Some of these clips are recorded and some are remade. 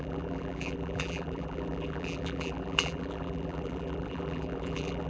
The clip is remade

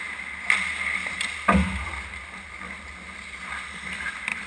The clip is recorded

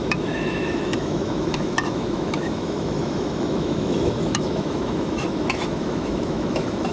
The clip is remade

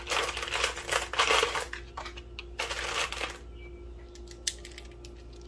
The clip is recorded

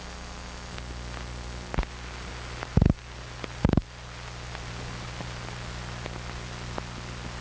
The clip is recorded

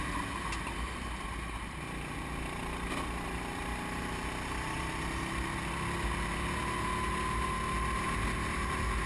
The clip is recorded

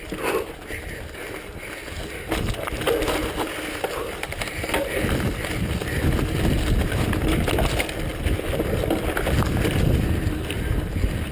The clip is recorded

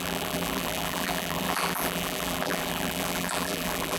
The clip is remade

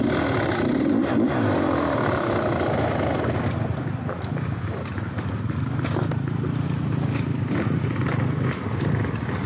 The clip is recorded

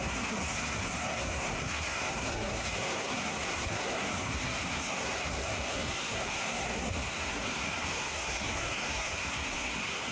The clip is remade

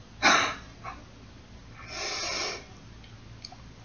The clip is recorded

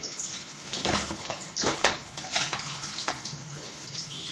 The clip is remade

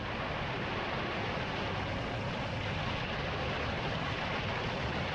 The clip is recorded